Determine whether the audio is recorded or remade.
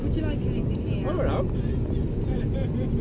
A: recorded